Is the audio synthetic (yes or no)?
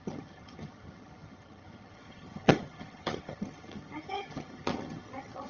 yes